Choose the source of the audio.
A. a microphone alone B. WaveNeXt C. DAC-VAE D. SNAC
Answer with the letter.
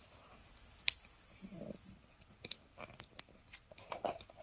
A